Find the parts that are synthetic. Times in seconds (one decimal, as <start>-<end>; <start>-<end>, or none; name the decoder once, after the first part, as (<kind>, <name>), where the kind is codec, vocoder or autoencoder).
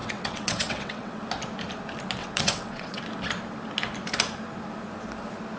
0.0-1.2 (vocoder, WaveNeXt); 2.2-3.0